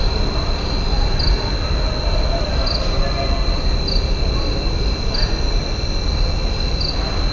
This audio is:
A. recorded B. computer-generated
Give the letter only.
A